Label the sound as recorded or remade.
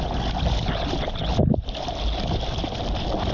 recorded